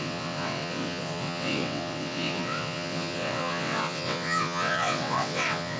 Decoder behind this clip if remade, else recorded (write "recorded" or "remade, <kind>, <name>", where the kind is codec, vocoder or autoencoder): remade, vocoder, WaveNeXt